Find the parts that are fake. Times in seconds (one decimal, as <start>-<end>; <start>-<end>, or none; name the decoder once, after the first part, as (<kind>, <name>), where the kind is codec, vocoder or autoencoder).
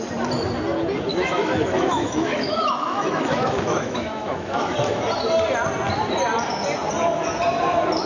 1.1-5.0 (autoencoder, DAC-VAE)